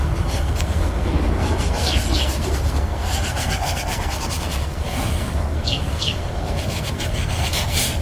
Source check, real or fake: fake